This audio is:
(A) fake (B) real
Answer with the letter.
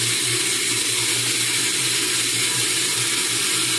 B